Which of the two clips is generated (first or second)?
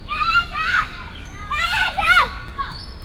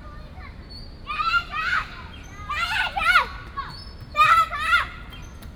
first